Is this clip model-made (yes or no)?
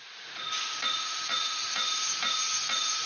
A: yes